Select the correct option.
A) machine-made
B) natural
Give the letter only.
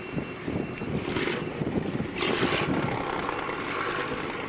B